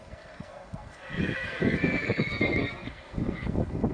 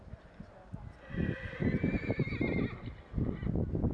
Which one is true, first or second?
second